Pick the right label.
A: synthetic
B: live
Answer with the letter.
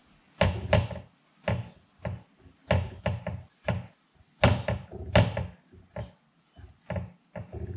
B